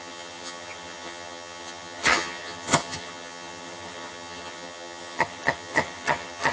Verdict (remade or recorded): remade